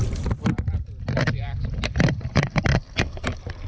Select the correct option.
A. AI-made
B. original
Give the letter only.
A